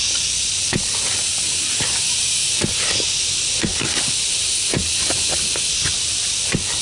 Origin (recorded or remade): recorded